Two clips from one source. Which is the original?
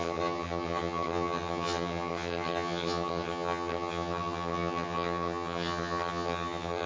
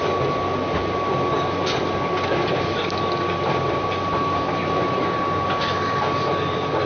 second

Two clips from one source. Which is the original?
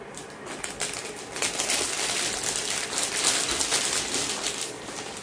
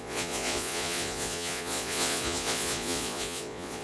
first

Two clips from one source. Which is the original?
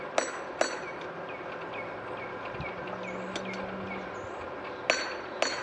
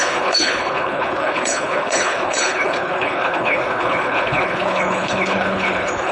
first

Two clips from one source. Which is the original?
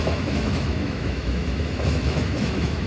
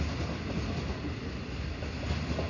second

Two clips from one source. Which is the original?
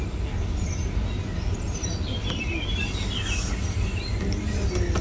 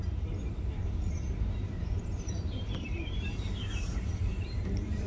first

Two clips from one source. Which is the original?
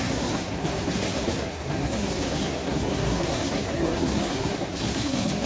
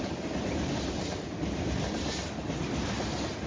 second